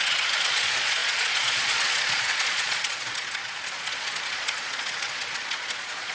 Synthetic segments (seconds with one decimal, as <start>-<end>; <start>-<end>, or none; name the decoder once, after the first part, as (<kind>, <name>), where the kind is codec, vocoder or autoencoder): 0.0-6.1 (vocoder, Vocos)